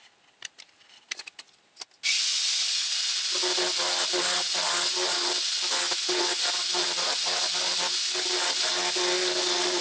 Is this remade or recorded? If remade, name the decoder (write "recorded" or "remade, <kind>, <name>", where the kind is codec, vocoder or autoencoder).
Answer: recorded